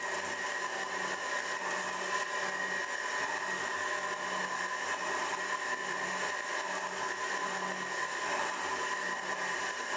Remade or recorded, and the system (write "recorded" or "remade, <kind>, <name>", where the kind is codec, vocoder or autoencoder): recorded